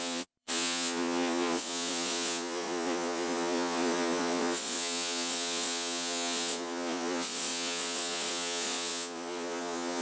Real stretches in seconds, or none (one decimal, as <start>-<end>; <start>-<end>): none